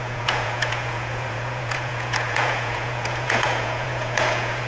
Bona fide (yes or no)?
no